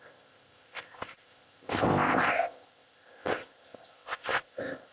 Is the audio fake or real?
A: fake